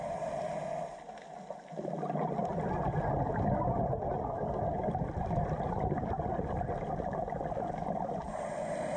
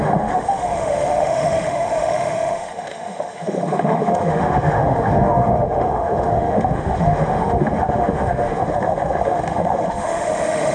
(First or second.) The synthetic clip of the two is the second